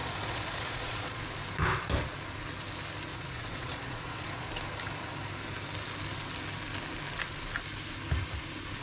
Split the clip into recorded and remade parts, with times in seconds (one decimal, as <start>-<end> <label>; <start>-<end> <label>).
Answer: 0.0-1.2 remade; 1.2-3.1 recorded; 3.1-4.5 remade; 4.5-8.8 recorded